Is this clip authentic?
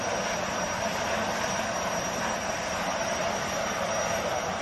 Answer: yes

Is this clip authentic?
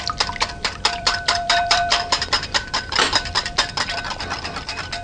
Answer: no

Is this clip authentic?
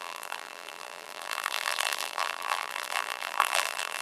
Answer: no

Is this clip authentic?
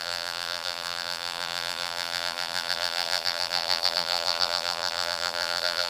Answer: no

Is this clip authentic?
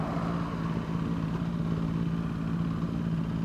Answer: yes